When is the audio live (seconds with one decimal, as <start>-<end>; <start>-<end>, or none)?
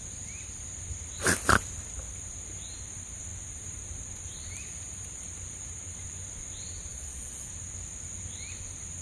0.0-6.9; 7.5-9.0